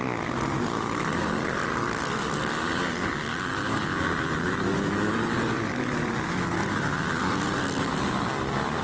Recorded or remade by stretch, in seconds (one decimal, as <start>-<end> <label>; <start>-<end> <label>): 0.0-8.8 recorded